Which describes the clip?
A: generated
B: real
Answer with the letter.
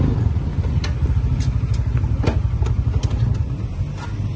B